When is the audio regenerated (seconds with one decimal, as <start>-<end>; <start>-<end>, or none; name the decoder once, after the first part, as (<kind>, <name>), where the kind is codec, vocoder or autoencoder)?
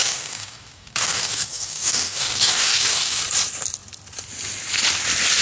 0.0-3.2 (codec, DAC)